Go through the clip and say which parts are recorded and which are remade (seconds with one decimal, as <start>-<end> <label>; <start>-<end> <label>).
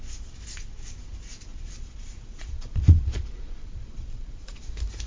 0.0-1.5 recorded; 1.5-4.6 remade; 4.6-5.1 recorded